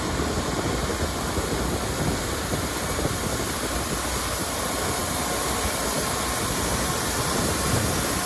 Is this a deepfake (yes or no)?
no